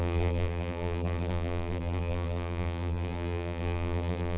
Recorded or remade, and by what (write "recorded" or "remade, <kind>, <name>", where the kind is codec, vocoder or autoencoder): remade, vocoder, BigVGAN v2